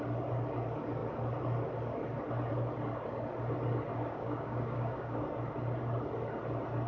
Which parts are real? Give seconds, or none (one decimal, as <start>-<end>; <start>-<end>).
0.0-3.9; 5.4-6.9